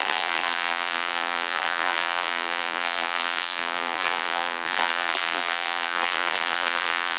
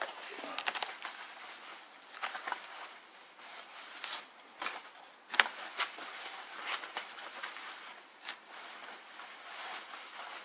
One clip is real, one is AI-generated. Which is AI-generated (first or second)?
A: first